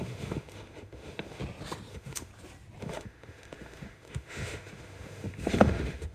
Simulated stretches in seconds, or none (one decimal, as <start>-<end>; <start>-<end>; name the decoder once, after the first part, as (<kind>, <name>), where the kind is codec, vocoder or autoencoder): 0.0-1.4 (autoencoder, DAC-VAE); 1.9-2.3; 2.8-6.1